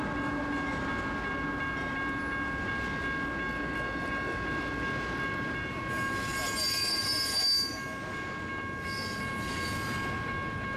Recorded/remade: recorded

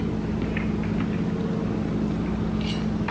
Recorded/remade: recorded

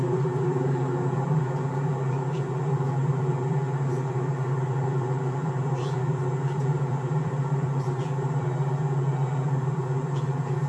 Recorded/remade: remade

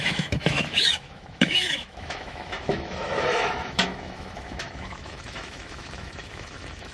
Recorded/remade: remade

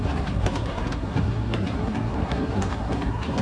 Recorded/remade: remade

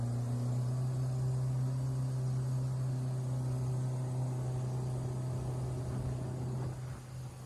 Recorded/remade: recorded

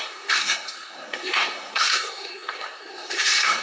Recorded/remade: remade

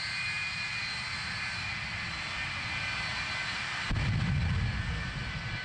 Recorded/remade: recorded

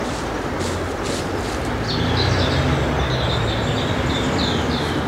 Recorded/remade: recorded